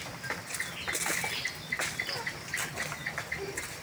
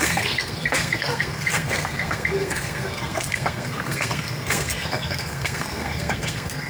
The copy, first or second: second